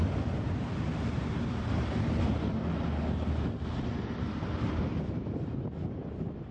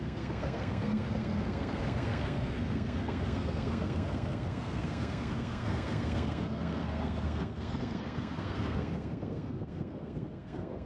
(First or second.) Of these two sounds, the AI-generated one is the second